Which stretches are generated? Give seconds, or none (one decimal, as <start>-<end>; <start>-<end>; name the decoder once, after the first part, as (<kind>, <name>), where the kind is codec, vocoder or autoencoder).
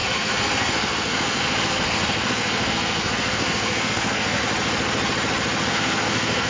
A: 0.0-4.4 (codec, SNAC); 5.7-6.5